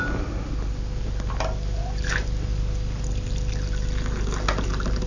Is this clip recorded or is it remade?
recorded